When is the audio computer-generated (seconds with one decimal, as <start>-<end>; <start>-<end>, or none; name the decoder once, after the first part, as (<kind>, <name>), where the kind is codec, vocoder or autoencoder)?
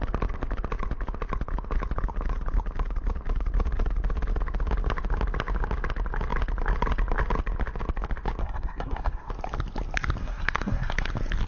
8.4-9.3 (codec, SNAC); 10.2-11.1